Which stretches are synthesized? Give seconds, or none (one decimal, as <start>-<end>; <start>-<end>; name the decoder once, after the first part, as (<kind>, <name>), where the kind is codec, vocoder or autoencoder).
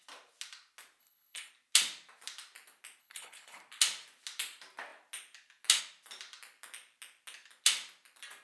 1.0-1.5 (codec, HILCodec); 3.0-3.6